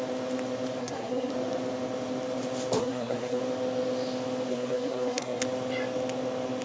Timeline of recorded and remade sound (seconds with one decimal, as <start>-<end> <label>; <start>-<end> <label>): 0.0-0.8 recorded; 0.8-1.3 remade; 1.3-2.8 recorded; 2.8-3.4 remade; 3.4-4.5 recorded; 4.5-5.4 remade; 5.4-6.6 recorded